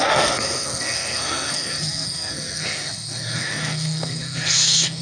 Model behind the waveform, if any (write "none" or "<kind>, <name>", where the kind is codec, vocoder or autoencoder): codec, SNAC